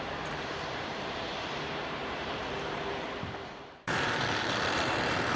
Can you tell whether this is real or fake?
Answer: fake